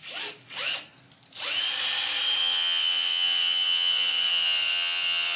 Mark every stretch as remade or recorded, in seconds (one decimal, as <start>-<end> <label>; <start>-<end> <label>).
0.0-2.4 recorded; 2.4-5.4 remade